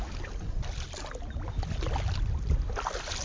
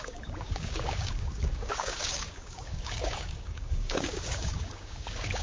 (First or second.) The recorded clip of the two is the first